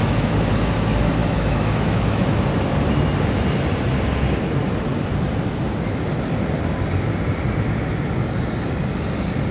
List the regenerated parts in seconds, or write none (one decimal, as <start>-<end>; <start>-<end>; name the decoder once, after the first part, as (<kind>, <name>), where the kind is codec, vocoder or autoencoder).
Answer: 0.0-0.5 (autoencoder, DAC-VAE); 1.2-2.4